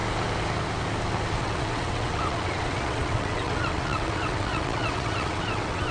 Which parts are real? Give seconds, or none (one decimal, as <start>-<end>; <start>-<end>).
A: 0.0-1.4